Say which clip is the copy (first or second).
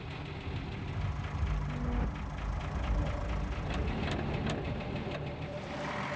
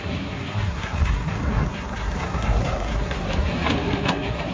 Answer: second